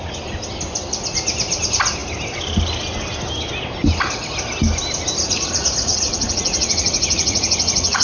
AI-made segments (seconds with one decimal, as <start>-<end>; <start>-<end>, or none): 5.2-8.0